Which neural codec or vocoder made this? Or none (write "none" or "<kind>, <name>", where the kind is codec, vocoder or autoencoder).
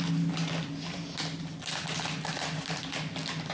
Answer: none